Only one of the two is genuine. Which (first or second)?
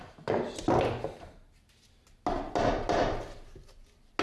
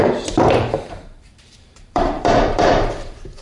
first